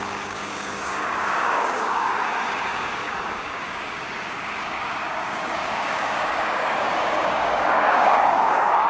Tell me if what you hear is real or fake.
fake